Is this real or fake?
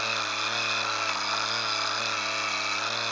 real